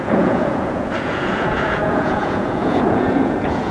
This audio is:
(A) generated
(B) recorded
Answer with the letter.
A